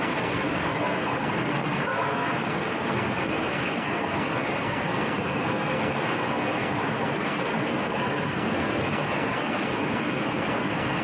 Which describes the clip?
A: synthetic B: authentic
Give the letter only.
A